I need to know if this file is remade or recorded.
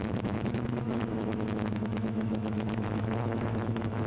remade